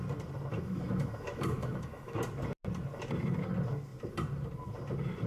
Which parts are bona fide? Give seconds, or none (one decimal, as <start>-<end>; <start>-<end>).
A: 0.0-0.5; 2.2-5.3